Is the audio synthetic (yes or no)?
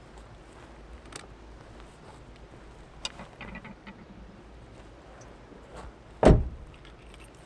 no